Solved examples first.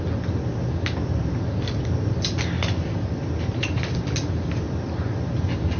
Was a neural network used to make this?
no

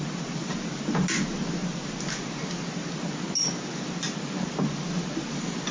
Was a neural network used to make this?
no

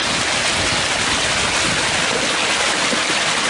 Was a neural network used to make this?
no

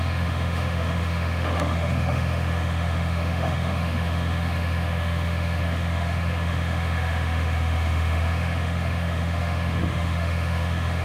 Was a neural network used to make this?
yes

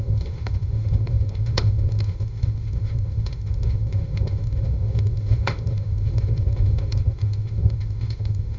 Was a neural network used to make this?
yes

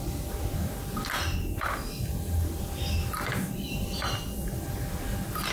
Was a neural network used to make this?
no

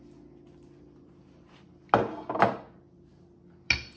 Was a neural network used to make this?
no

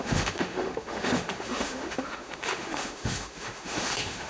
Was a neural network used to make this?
yes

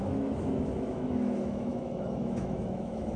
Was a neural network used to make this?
yes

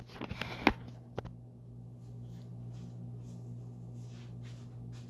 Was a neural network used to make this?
no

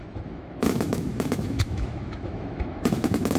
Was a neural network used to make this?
yes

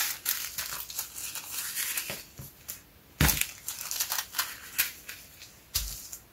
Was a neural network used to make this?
no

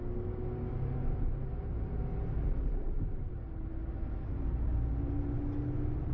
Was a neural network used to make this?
no